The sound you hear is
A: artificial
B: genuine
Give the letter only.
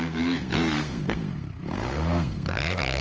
A